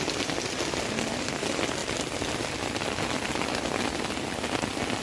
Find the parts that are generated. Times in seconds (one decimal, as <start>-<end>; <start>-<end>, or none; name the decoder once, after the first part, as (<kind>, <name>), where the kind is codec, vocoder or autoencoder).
none